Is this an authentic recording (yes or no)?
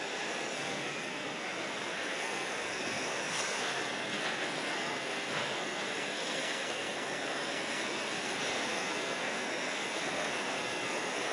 no